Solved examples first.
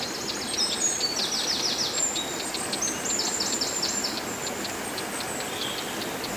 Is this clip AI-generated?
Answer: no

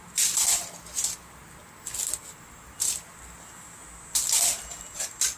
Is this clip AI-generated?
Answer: no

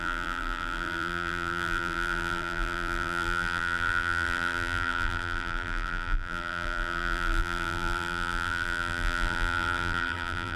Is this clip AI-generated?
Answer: yes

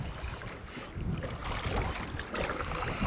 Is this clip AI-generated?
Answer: no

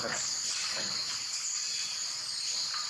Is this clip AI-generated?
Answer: no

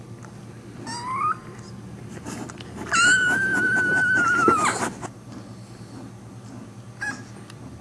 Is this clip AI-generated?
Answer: no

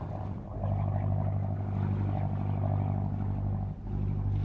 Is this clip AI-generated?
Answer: no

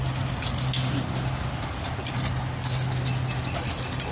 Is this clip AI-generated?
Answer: no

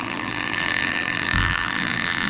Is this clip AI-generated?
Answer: yes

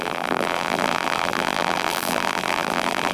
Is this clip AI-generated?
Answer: yes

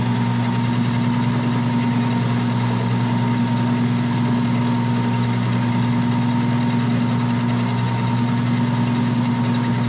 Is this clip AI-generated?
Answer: no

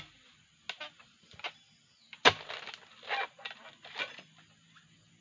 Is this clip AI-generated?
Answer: no